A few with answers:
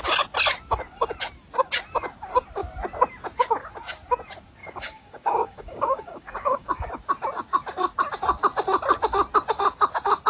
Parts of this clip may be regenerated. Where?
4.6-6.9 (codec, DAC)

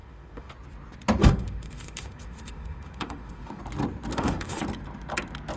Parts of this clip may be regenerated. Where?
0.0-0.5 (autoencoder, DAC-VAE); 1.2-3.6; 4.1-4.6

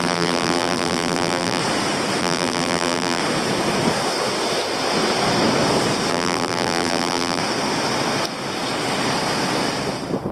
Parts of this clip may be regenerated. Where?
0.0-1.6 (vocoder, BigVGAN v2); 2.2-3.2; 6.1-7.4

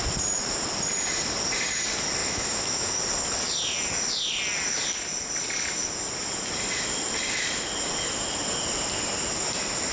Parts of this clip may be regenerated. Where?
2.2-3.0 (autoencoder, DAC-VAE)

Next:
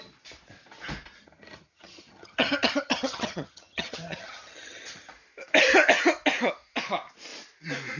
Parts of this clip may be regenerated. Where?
1.2-5.1 (vocoder, HiFi-GAN)

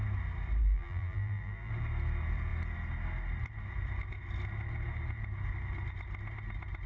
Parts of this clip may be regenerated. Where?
0.6-1.7 (vocoder, BigVGAN v2)

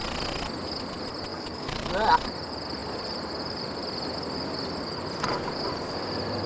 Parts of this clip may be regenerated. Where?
1.3-1.9 (codec, DAC)

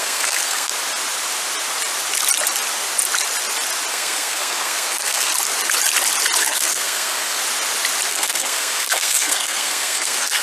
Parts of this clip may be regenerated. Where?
0.0-0.7 (codec, SNAC); 3.9-5.3; 6.4-7.4; 8.1-10.4